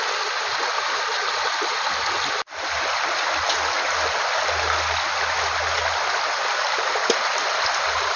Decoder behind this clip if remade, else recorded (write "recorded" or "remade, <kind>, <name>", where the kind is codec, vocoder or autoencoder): recorded